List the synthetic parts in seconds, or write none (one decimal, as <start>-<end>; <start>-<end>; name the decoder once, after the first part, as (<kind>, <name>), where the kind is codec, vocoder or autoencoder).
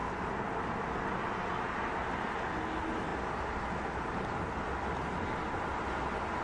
none